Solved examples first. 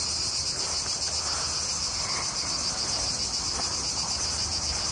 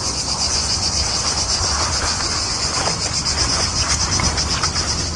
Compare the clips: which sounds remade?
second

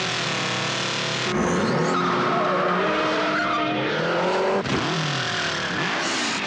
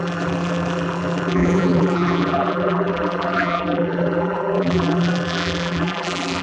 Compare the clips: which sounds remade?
second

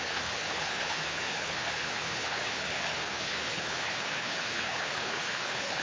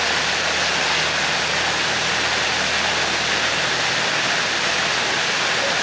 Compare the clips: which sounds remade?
first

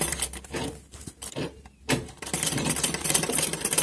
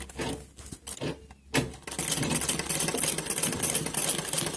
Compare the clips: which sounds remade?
first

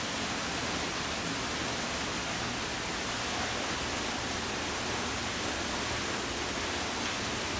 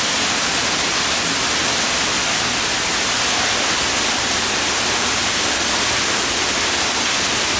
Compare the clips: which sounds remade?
second